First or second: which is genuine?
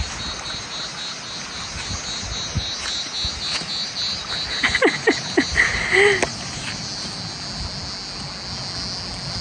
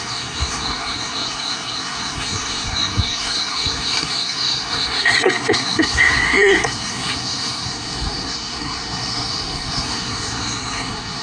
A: first